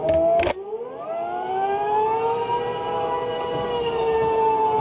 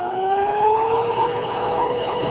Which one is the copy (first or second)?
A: second